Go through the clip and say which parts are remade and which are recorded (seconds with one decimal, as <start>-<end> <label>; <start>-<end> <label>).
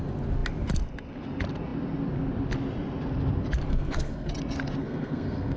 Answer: 0.0-3.7 recorded; 3.7-4.3 remade; 4.3-4.8 recorded; 4.8-5.6 remade